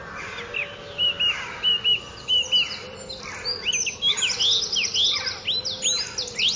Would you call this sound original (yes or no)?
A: yes